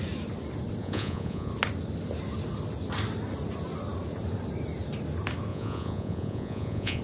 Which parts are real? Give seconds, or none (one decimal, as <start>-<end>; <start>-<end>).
0.0-0.8; 1.5-5.5